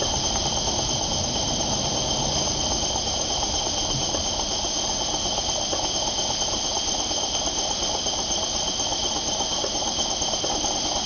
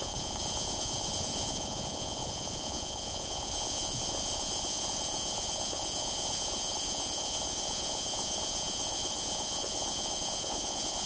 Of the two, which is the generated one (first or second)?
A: second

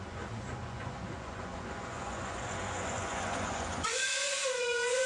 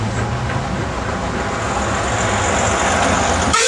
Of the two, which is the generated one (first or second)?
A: first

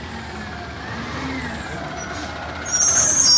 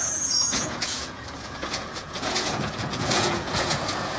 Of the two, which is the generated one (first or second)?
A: second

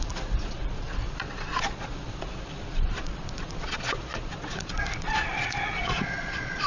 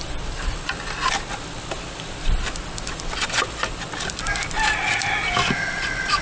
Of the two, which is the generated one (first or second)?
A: first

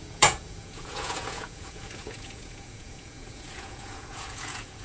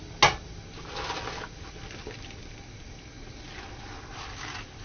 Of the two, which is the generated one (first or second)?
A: first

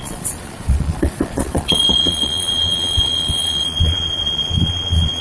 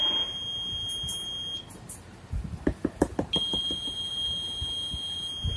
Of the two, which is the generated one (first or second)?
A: first